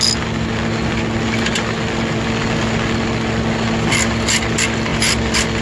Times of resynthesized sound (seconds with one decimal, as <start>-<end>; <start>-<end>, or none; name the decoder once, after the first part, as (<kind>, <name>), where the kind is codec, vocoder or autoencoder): none